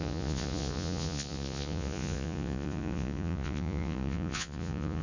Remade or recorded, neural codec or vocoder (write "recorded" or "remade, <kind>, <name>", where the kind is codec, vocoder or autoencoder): remade, vocoder, Vocos